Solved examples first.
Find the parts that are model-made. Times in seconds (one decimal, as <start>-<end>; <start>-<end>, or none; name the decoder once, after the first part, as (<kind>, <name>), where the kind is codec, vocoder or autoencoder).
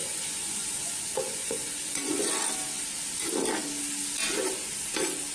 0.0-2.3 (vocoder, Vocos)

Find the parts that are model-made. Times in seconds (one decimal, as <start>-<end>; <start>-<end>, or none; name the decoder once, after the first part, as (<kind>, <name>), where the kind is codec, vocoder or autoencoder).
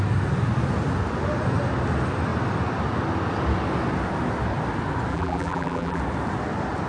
5.1-6.0 (vocoder, BigVGAN v2)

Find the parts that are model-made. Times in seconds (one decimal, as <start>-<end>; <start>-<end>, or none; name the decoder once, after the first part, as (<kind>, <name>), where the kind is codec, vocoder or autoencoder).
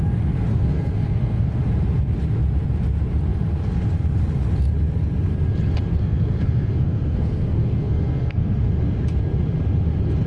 0.5-1.6 (codec, SNAC); 5.9-8.7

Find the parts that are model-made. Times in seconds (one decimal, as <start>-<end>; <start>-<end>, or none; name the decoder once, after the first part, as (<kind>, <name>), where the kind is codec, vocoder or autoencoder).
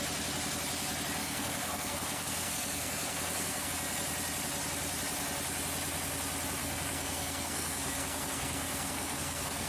1.2-3.7 (codec, SNAC); 6.6-9.7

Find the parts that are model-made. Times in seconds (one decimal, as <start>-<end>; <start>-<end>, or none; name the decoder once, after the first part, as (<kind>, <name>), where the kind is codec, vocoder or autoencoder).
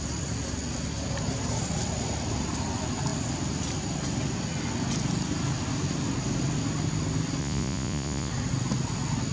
7.4-8.3 (vocoder, Vocos)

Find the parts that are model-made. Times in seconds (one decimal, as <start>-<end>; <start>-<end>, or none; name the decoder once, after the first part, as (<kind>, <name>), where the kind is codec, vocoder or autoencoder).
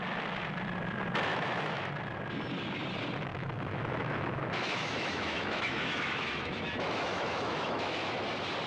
1.3-1.9 (autoencoder, DAC-VAE); 3.3-8.1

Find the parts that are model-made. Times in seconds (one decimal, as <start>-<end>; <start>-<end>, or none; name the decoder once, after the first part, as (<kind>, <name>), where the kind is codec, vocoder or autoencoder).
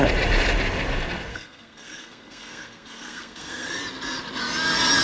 1.3-3.8 (codec, SNAC)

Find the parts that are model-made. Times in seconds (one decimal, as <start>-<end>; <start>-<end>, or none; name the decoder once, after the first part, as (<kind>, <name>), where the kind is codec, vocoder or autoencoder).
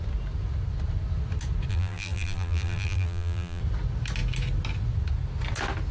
1.7-3.6 (vocoder, BigVGAN v2)